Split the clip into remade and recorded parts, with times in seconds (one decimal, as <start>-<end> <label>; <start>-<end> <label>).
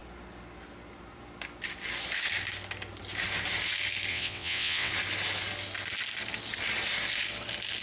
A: 0.0-4.1 recorded; 4.1-4.9 remade; 4.9-7.8 recorded